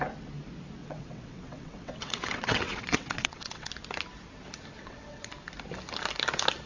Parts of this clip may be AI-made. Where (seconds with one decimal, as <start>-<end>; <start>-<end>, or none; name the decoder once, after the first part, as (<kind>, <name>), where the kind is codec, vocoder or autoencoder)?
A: 0.8-3.7 (vocoder, WaveNeXt); 4.8-5.3